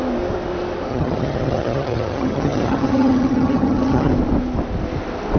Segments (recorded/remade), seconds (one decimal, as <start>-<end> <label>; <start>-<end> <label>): 0.0-0.9 recorded; 0.9-4.1 remade; 4.1-5.4 recorded